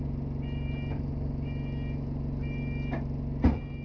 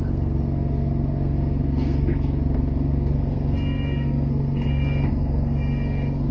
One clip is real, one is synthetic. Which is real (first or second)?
first